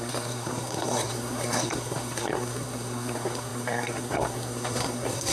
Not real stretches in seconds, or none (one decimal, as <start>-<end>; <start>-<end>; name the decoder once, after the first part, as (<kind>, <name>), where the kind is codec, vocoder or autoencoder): 0.0-5.3 (codec, SNAC)